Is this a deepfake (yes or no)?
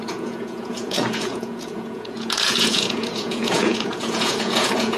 yes